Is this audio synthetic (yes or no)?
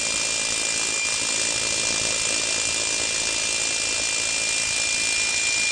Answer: no